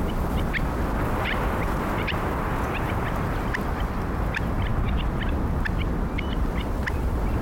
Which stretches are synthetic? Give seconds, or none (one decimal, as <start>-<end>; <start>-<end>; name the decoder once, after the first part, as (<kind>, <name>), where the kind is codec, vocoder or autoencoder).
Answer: none

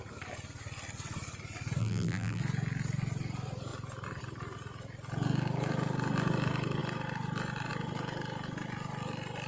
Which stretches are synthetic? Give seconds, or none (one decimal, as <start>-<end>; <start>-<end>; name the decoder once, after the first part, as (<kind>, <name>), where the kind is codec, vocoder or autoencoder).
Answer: 1.8-2.4 (vocoder, BigVGAN v2)